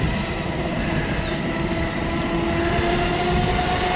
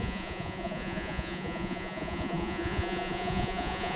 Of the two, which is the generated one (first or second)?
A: second